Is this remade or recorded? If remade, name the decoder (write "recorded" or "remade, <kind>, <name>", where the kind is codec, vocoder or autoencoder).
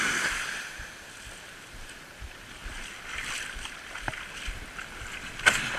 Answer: recorded